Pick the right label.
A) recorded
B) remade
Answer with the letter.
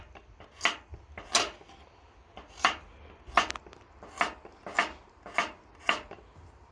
A